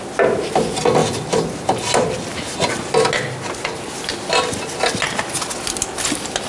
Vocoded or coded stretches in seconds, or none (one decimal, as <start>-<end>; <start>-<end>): none